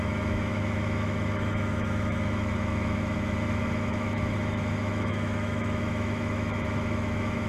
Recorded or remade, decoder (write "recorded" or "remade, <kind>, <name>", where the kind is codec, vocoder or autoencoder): remade, autoencoder, DAC-VAE